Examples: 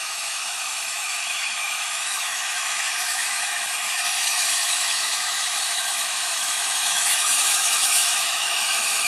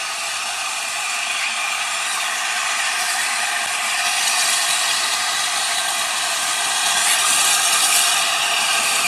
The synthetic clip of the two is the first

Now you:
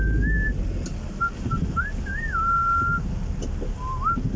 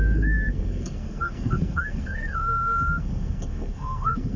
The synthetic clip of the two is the second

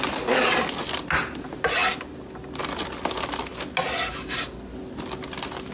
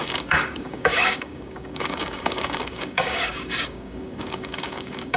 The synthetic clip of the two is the second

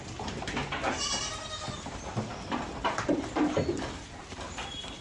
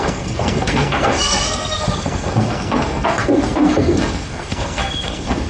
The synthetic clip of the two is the second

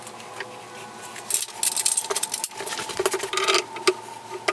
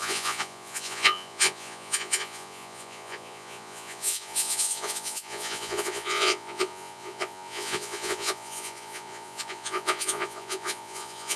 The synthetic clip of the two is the second